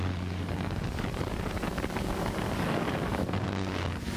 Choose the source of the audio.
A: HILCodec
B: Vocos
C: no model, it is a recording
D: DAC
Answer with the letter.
D